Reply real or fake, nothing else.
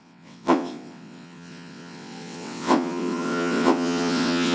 fake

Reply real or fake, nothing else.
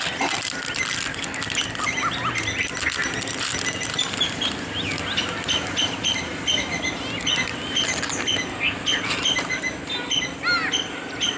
real